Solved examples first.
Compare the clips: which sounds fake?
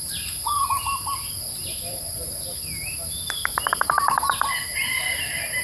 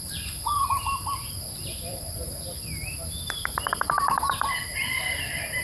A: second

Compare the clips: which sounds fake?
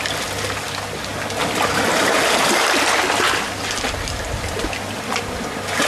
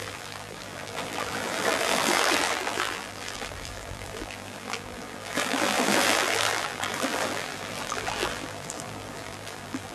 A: second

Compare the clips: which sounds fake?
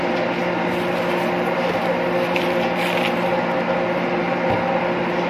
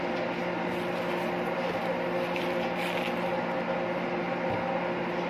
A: first